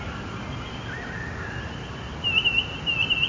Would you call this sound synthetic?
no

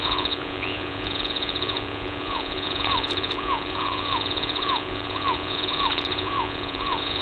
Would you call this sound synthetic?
yes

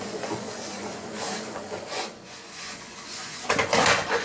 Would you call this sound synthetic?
yes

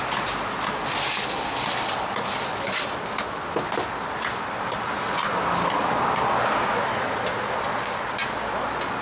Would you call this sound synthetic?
no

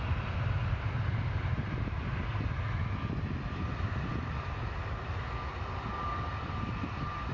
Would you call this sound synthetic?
no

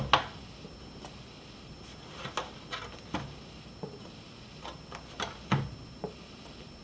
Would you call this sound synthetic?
no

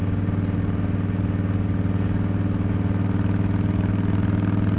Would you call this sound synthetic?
no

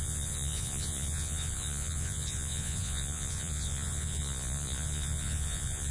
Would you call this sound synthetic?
yes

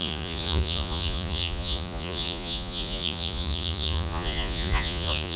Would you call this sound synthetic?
yes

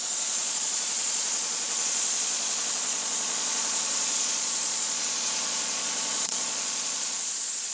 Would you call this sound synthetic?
yes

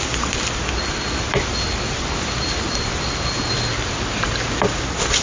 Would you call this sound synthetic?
no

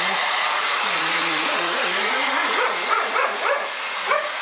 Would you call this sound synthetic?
yes